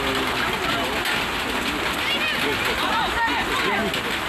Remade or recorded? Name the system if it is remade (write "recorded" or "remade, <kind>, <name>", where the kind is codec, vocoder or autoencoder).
recorded